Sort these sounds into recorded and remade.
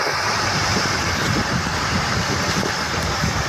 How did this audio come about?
remade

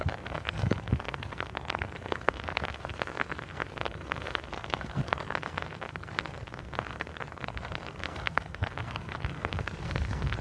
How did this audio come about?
remade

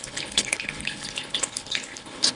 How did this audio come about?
remade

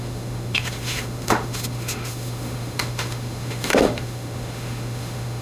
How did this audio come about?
remade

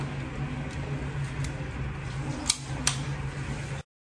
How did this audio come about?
recorded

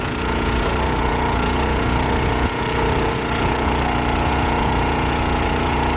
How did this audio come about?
remade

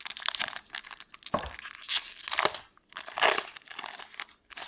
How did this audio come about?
recorded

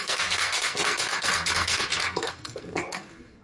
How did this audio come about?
remade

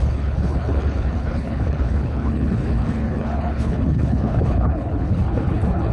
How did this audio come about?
remade